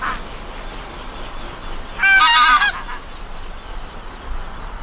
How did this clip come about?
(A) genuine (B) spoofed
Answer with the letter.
A